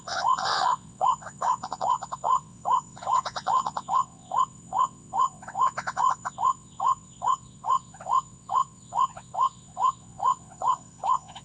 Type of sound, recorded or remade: remade